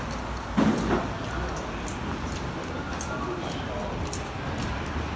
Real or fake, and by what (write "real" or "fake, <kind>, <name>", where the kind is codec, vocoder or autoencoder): real